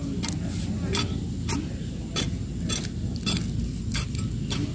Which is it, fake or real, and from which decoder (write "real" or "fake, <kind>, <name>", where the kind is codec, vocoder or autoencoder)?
real